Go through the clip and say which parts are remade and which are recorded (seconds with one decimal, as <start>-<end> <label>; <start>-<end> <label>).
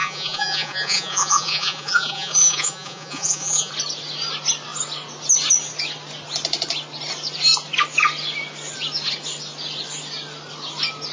0.0-3.7 remade; 3.7-11.1 recorded